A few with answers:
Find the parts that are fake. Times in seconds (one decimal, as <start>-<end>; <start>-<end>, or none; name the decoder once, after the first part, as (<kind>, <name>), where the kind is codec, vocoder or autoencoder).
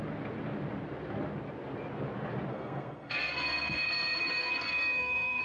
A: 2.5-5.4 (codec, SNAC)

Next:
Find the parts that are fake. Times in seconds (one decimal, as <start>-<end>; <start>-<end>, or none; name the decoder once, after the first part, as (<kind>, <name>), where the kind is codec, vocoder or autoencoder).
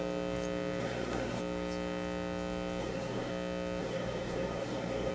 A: 0.8-1.4 (codec, SNAC); 2.8-3.3; 3.8-5.1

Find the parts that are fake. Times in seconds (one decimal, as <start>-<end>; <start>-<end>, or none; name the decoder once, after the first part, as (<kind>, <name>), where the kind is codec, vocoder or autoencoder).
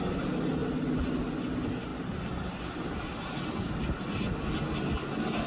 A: none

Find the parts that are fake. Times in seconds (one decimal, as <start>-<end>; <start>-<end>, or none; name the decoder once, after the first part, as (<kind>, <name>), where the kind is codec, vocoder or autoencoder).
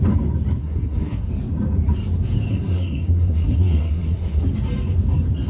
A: 0.6-1.3 (codec, SNAC); 2.5-4.5